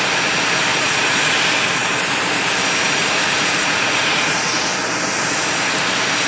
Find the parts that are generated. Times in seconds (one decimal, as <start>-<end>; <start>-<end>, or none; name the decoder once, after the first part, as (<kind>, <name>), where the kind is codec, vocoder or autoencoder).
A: 0.7-1.3 (vocoder, Vocos); 3.0-4.7